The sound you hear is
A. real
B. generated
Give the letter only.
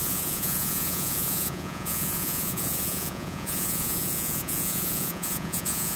B